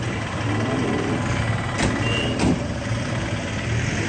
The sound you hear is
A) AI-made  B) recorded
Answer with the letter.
B